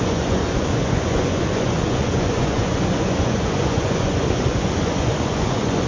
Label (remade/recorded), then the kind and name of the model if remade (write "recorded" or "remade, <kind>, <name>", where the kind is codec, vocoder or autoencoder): remade, vocoder, Vocos